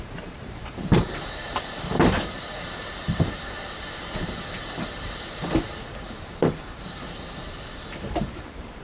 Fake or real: fake